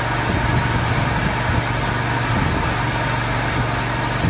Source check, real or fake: real